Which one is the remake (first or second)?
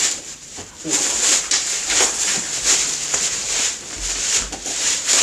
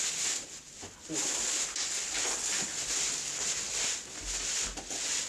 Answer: first